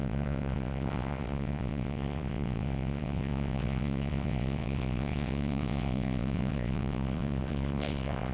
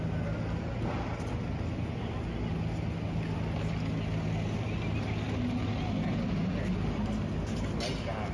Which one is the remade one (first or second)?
first